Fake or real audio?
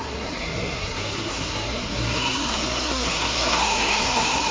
fake